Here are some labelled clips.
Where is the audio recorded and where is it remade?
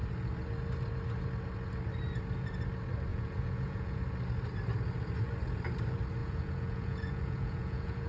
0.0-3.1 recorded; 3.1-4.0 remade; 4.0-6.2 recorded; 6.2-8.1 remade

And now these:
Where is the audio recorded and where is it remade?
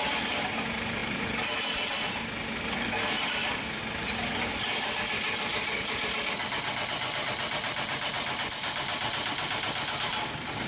0.0-10.7 recorded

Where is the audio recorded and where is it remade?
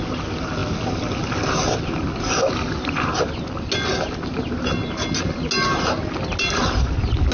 0.0-7.3 recorded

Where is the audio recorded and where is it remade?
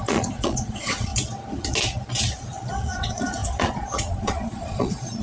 0.0-1.1 remade; 1.1-2.7 recorded; 2.7-5.2 remade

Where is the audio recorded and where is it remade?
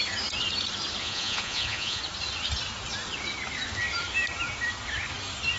0.0-1.0 recorded; 1.0-2.0 remade; 2.0-5.6 recorded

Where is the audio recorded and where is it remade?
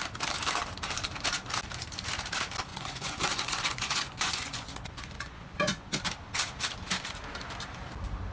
0.0-2.7 recorded; 2.7-6.0 remade; 6.0-8.3 recorded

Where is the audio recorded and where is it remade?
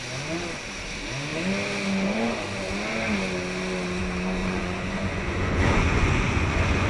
0.0-4.4 recorded; 4.4-6.9 remade